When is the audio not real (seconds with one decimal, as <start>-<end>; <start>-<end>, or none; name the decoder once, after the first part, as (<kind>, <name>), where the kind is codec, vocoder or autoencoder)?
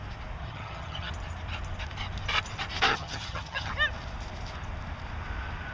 0.4-1.1 (vocoder, HiFi-GAN); 2.9-3.7